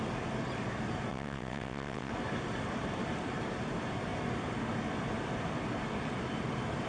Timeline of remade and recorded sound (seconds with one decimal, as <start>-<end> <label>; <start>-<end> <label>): 0.0-1.1 recorded; 1.1-2.1 remade; 2.1-6.9 recorded